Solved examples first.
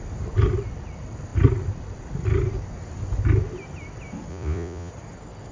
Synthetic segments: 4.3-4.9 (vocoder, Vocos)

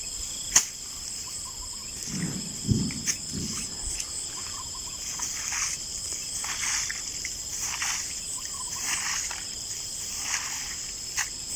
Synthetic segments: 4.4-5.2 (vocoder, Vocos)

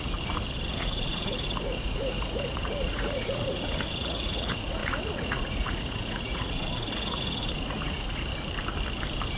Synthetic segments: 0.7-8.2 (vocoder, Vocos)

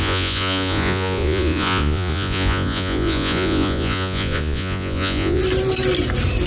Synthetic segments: 0.0-5.4 (vocoder, Vocos)